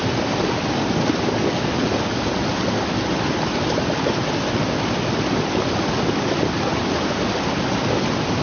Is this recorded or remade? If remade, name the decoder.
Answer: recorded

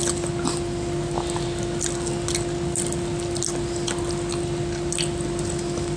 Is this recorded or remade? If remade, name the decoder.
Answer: recorded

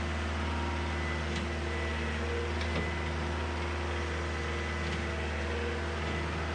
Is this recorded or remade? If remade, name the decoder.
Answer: recorded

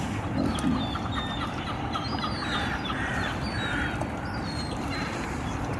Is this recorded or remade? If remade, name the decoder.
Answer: recorded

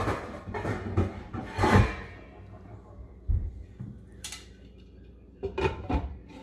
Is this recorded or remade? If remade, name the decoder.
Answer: remade, vocoder, BigVGAN v2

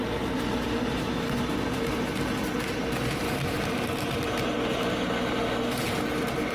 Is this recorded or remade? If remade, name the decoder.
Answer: recorded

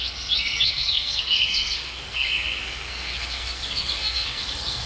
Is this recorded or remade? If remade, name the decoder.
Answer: remade, codec, SNAC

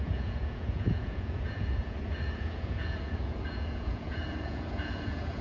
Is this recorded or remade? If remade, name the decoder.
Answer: remade, vocoder, Vocos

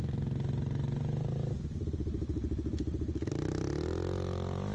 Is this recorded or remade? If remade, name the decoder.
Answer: recorded